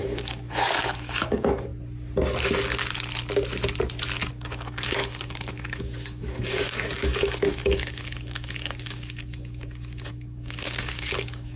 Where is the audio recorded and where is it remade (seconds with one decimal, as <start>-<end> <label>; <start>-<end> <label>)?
0.0-1.7 remade; 1.7-4.3 recorded; 4.3-11.6 remade